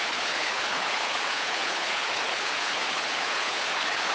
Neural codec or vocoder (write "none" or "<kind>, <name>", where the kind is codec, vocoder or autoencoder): codec, HILCodec